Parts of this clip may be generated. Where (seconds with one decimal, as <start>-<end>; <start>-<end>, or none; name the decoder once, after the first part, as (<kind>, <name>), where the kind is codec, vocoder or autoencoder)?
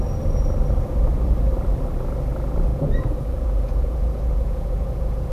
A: 2.7-5.3 (vocoder, Vocos)